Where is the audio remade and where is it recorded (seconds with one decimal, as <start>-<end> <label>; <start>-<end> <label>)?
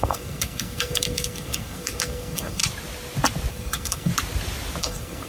0.0-2.6 remade; 2.6-3.5 recorded; 3.5-4.1 remade; 4.1-4.8 recorded; 4.8-5.3 remade